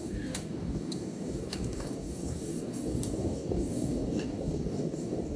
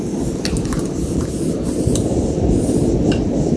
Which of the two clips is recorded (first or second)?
second